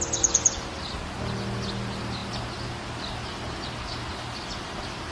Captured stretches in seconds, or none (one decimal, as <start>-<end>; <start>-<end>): 0.0-5.1